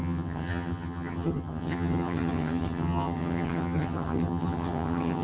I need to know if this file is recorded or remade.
remade